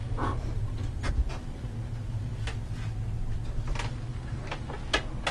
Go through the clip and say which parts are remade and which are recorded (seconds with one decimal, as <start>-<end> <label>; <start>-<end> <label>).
0.0-1.1 remade; 1.1-4.1 recorded; 4.1-4.7 remade; 4.7-5.3 recorded